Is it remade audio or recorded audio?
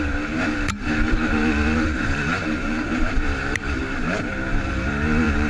remade